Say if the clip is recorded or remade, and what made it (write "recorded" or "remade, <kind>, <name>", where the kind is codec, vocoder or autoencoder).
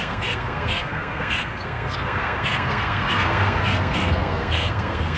remade, codec, SNAC